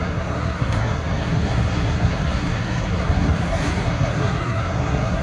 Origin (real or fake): fake